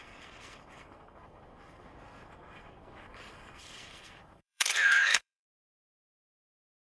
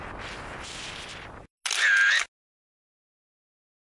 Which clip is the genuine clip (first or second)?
second